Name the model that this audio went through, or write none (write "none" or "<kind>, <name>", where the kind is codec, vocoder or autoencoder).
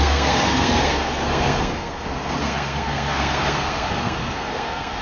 codec, SNAC